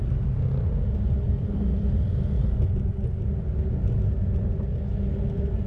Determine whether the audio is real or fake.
real